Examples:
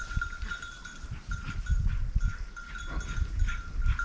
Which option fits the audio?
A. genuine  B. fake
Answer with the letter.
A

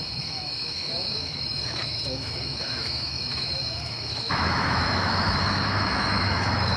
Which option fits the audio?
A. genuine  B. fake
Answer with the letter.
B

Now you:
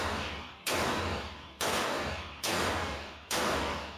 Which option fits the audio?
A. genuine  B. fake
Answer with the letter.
B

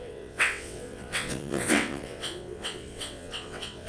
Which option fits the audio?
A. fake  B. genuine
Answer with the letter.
A